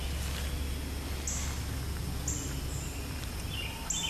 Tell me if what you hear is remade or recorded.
recorded